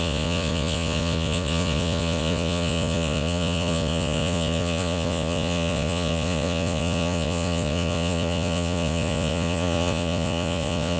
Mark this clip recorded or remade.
remade